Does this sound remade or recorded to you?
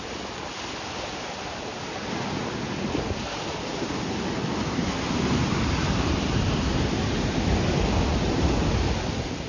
recorded